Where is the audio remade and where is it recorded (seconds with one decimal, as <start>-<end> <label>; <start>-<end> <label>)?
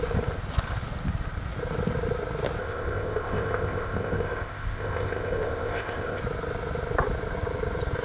0.0-2.6 recorded; 2.6-6.2 remade; 6.2-8.0 recorded